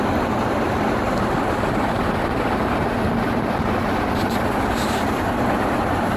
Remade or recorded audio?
recorded